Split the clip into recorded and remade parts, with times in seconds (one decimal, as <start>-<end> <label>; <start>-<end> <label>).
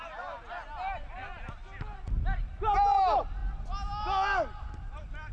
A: 0.0-5.3 recorded